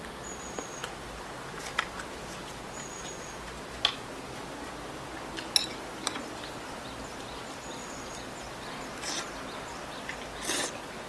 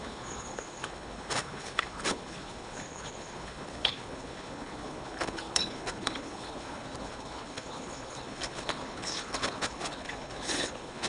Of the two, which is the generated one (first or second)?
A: second